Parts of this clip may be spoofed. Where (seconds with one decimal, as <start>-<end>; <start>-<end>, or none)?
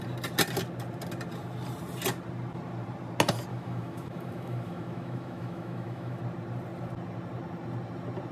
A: 3.5-6.2